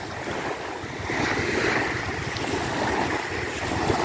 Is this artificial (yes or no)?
no